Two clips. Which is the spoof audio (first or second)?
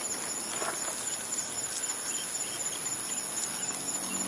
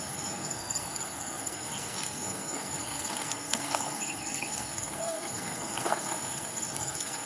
second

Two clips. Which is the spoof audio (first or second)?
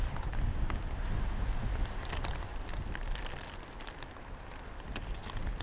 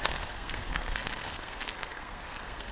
second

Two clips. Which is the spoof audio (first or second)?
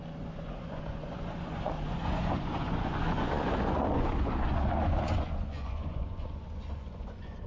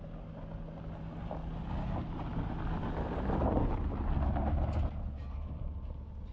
first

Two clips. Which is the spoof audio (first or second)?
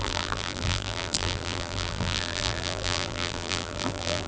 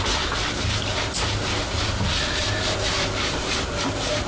first